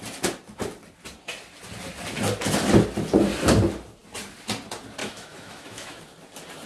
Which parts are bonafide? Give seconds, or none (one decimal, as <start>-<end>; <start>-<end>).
0.0-5.0; 6.0-6.7